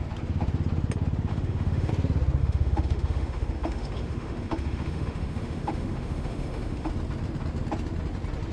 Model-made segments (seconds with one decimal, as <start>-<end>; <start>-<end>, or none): 1.3-1.9; 2.4-6.9